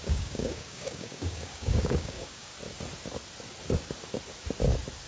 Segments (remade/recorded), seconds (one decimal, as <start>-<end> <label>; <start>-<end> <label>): 0.0-2.5 remade; 2.5-5.1 recorded